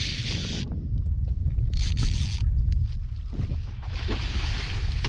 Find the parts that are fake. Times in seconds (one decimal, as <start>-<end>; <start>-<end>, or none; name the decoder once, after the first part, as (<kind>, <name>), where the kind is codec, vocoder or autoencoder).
0.0-0.4 (autoencoder, DAC-VAE); 3.5-5.1